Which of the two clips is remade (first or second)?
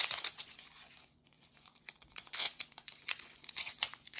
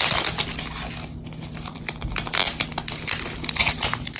first